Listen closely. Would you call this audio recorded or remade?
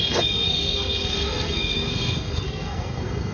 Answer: remade